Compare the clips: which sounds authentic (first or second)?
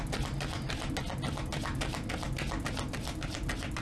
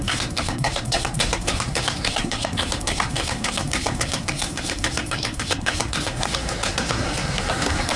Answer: first